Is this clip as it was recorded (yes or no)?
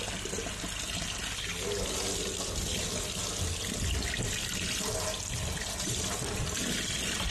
yes